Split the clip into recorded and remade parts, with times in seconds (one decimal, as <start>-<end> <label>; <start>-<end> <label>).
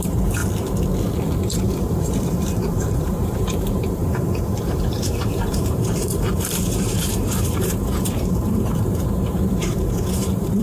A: 0.0-0.4 remade; 0.4-1.8 recorded; 1.8-10.6 remade